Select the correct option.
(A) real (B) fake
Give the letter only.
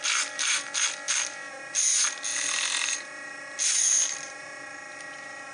A